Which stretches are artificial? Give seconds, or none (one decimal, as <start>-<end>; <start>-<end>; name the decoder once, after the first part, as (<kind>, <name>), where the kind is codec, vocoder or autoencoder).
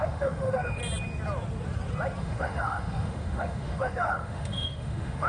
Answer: 0.0-0.8 (autoencoder, DAC-VAE); 2.2-5.3